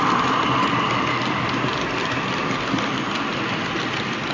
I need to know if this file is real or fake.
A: real